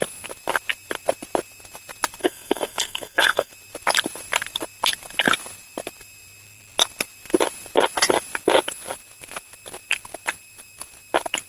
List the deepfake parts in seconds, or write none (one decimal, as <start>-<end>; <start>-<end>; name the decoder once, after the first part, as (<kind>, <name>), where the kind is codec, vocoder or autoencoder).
2.2-3.5 (codec, SNAC)